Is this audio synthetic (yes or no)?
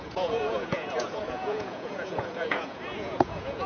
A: yes